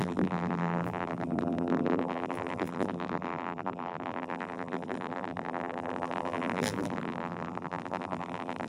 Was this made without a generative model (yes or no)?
no